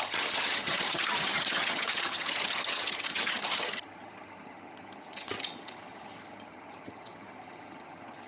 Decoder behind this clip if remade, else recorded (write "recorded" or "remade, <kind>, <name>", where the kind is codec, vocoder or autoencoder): remade, vocoder, HiFi-GAN